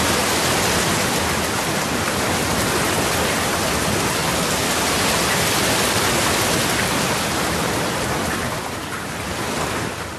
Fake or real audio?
real